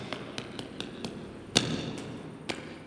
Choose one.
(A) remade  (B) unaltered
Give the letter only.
B